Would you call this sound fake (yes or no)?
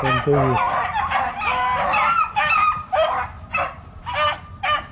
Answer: no